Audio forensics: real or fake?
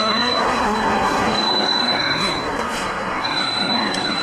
fake